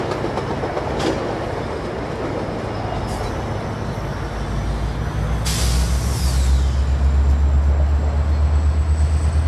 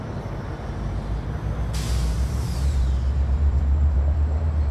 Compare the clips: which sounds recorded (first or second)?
first